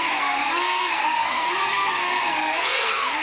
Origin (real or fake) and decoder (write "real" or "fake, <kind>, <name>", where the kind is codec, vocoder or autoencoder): fake, codec, SNAC